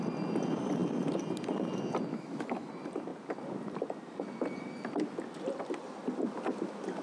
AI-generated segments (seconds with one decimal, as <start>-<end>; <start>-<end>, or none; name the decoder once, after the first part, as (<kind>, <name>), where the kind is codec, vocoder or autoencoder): 2.1-2.7 (autoencoder, DAC-VAE)